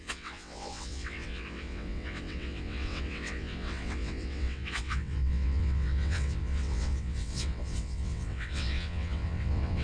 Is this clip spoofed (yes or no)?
yes